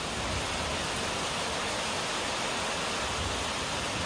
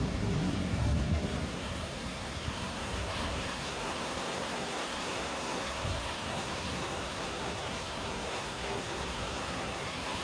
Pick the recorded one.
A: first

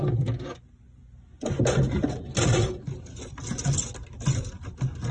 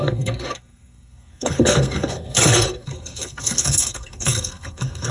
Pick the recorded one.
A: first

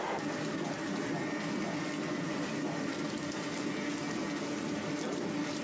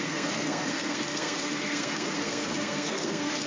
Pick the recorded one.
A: first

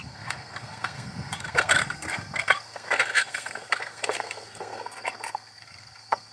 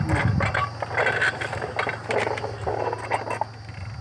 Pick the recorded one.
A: second